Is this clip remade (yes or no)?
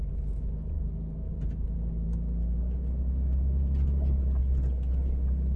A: no